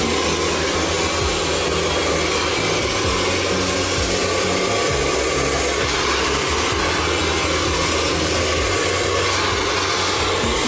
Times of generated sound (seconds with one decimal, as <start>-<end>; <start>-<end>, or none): none